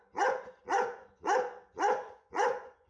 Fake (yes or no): yes